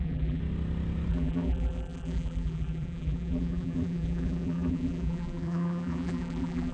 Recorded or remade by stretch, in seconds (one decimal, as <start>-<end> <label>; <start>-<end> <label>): 0.0-0.4 remade; 0.4-1.1 recorded; 1.1-6.7 remade